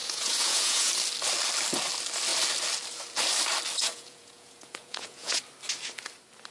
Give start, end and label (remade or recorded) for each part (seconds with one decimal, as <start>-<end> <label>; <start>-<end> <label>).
0.0-0.9 remade; 0.9-3.8 recorded; 3.8-5.4 remade; 5.4-6.5 recorded

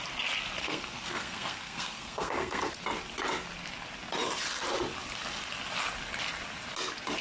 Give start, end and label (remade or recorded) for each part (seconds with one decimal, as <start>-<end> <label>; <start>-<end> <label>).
0.0-0.6 recorded; 0.6-2.7 remade; 2.7-7.2 recorded

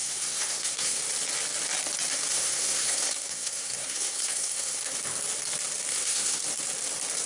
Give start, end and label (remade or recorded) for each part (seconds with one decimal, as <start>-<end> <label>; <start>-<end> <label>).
0.0-1.0 remade; 1.0-2.3 recorded; 2.3-4.8 remade; 4.8-5.9 recorded; 5.9-6.4 remade; 6.4-7.3 recorded

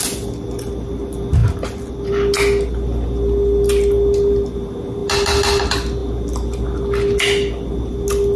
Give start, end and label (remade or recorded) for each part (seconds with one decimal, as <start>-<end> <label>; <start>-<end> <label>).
0.0-8.4 recorded

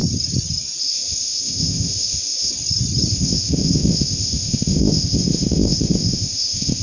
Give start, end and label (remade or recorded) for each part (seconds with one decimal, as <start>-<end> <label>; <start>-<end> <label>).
0.0-0.8 recorded; 0.8-2.5 remade; 2.5-3.1 recorded; 3.1-6.8 remade

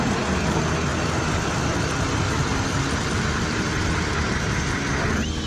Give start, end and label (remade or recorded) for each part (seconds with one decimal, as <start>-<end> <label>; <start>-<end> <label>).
0.0-5.5 recorded

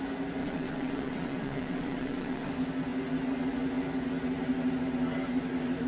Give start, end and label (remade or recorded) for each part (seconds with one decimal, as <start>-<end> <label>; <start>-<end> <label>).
0.0-0.4 recorded; 0.4-2.5 remade; 2.5-5.9 recorded